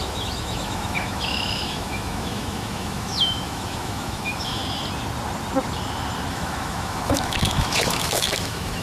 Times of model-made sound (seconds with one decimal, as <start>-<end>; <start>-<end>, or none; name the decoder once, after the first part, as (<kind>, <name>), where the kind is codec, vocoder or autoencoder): 0.0-4.6 (autoencoder, DAC-VAE); 6.3-8.8